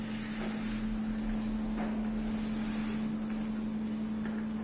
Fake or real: real